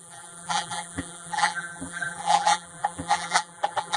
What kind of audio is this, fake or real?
fake